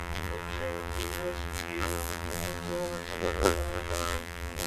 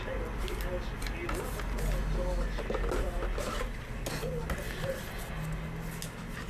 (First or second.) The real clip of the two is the second